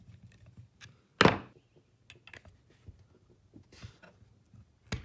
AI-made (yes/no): no